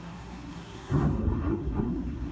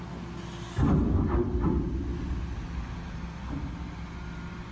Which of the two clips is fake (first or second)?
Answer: first